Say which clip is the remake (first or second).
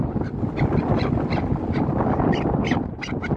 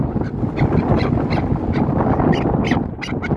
first